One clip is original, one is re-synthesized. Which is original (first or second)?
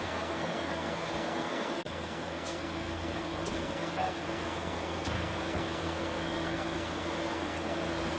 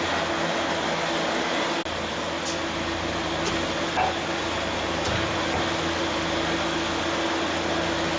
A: second